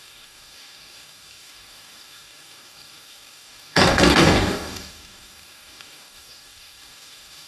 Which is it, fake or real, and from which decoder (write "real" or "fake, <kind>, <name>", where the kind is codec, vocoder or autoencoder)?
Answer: fake, codec, DAC